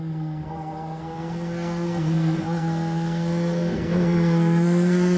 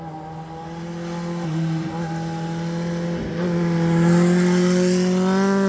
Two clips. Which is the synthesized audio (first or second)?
first